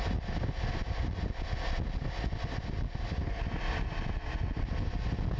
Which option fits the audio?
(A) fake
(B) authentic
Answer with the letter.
B